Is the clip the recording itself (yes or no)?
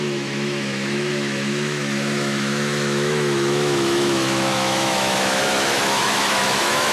no